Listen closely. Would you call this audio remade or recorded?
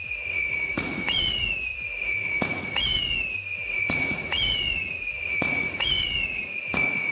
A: remade